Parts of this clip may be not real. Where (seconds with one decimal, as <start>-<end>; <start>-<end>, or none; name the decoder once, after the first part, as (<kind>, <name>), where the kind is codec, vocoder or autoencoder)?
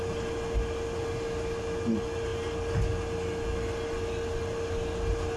none